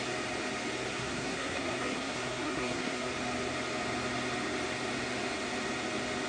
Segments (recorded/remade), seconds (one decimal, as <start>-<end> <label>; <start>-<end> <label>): 0.0-0.9 recorded; 0.9-3.1 remade; 3.1-6.3 recorded